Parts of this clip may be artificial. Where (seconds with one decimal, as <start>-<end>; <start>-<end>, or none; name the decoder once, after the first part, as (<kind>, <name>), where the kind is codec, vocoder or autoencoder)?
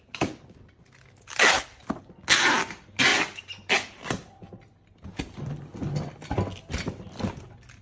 none